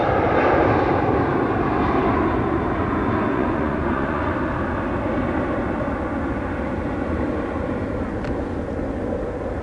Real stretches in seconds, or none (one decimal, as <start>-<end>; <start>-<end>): 0.0-3.3; 4.3-9.6